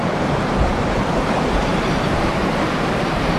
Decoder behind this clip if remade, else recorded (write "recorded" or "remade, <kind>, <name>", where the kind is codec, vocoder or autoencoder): remade, vocoder, BigVGAN v2